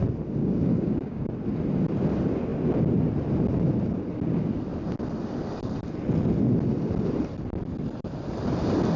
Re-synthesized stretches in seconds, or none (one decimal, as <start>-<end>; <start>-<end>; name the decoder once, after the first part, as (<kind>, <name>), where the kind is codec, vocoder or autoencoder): 0.4-1.3 (codec, DAC)